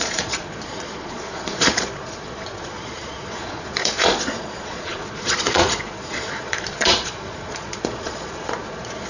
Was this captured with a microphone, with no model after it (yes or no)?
no